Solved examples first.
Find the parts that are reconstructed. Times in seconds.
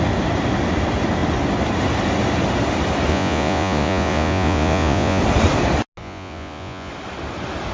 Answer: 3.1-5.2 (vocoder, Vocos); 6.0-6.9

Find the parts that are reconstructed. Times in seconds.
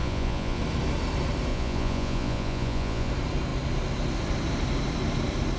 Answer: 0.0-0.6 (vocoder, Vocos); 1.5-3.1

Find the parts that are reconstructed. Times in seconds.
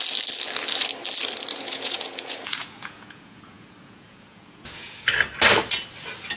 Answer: 1.5-5.1 (vocoder, Vocos)